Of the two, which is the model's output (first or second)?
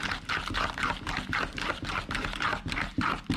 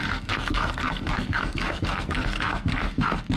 second